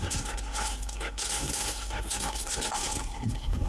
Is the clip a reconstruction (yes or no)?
yes